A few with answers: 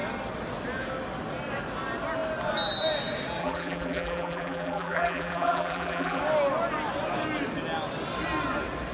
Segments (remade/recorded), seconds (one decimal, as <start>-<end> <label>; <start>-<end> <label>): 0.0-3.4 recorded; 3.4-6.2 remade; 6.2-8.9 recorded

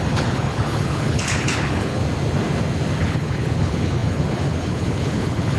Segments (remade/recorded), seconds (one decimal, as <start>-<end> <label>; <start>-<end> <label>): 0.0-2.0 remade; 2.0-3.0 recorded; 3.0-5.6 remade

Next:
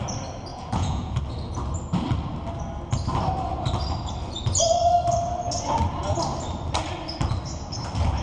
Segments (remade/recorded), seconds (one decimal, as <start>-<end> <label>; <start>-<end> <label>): 0.0-0.5 recorded; 0.5-1.2 remade; 1.2-8.2 recorded